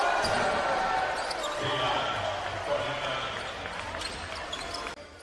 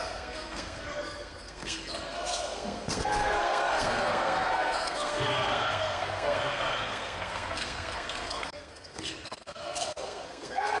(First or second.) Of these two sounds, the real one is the first